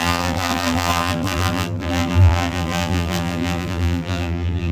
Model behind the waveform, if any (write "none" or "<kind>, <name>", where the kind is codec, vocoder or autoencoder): vocoder, BigVGAN v2